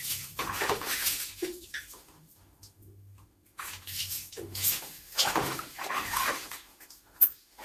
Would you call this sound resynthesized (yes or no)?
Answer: yes